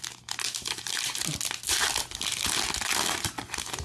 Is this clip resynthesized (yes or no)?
no